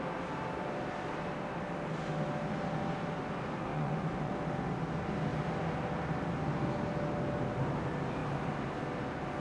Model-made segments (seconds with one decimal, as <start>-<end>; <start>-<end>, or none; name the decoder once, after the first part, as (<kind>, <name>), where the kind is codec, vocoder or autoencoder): 3.7-4.3 (vocoder, Vocos)